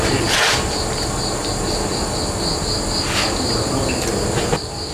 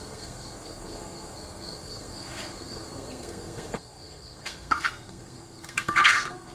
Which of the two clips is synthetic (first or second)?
second